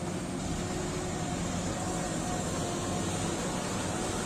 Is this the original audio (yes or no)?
yes